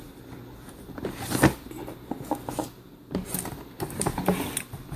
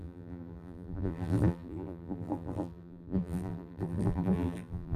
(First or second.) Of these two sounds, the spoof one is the second